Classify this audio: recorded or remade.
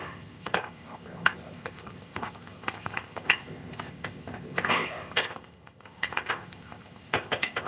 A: remade